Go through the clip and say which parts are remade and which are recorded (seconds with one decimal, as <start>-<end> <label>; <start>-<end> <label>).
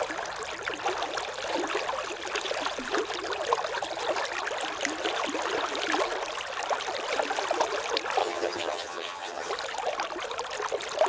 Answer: 0.0-8.2 recorded; 8.2-9.5 remade; 9.5-11.1 recorded